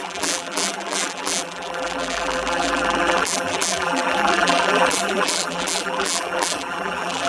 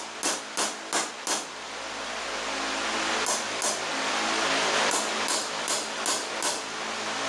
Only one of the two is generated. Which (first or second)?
first